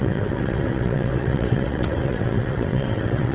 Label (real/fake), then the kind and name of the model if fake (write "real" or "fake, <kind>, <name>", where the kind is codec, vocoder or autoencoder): fake, vocoder, WaveNeXt